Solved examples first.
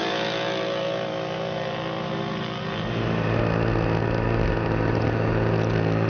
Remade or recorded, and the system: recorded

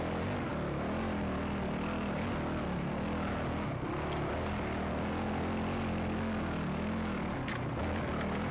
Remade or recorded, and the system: recorded